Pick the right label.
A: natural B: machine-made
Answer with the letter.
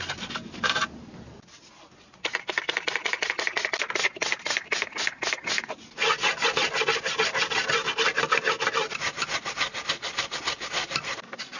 A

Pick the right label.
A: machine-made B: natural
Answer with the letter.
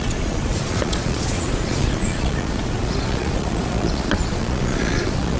A